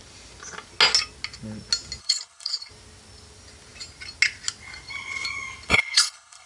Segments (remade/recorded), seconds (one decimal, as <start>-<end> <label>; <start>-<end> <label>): 0.0-2.0 recorded; 2.0-2.7 remade; 2.7-5.7 recorded; 5.7-6.5 remade